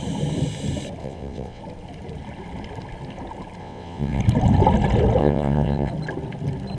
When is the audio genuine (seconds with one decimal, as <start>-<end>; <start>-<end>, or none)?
0.0-1.0; 1.6-3.6; 4.2-5.2; 5.9-6.8